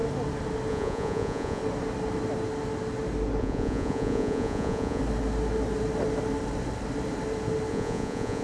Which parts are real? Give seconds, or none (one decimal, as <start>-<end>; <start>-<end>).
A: 0.0-0.7; 1.6-3.4; 5.0-7.7